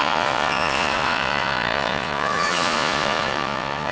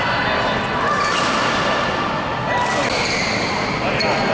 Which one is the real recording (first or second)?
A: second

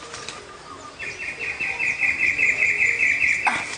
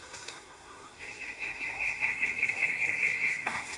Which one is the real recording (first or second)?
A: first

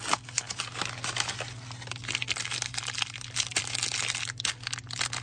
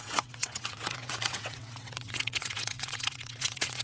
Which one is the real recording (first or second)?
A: first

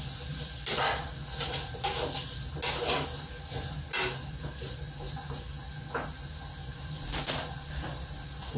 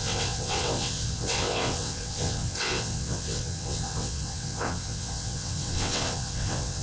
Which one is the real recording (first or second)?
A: first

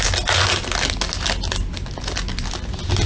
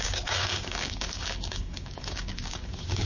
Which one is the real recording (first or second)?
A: first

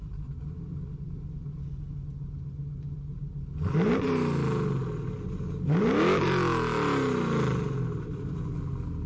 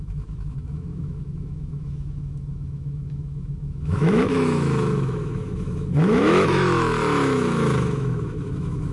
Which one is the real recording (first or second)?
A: first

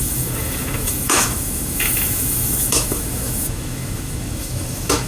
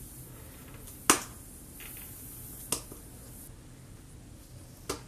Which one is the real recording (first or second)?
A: second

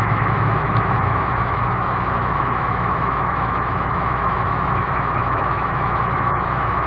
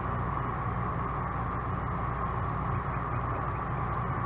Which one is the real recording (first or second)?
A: second